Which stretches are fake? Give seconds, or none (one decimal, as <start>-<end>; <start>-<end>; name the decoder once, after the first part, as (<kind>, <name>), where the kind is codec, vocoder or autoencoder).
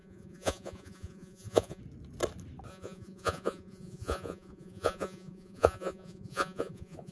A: 0.0-1.8 (vocoder, Vocos); 2.7-7.1